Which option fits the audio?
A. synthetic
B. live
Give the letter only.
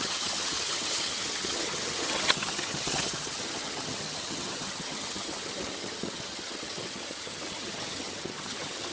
A